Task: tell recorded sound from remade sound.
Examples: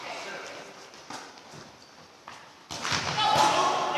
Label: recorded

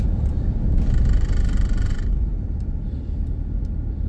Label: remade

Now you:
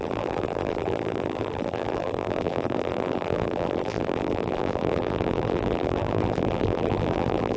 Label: remade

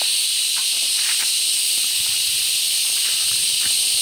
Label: recorded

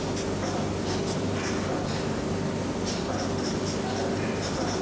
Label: recorded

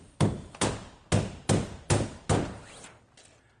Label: recorded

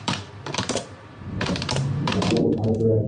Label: remade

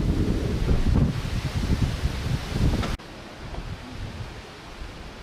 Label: recorded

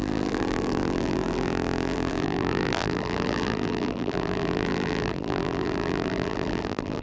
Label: remade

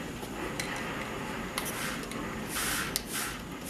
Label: recorded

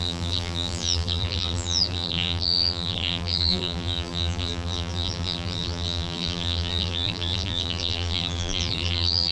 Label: remade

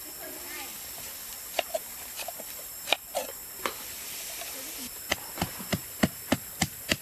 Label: remade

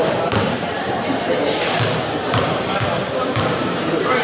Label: remade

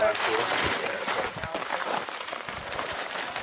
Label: remade